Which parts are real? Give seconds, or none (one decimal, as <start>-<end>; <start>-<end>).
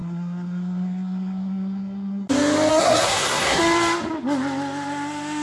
2.3-2.7; 3.6-5.4